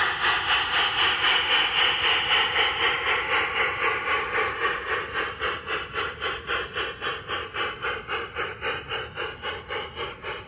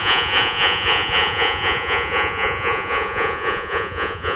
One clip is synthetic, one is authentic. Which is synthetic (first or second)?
second